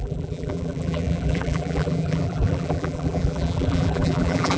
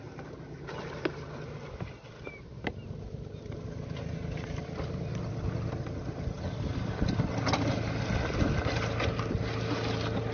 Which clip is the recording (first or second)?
second